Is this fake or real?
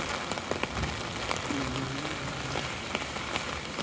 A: real